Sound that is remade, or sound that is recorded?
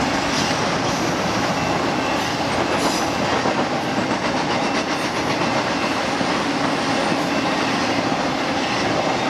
recorded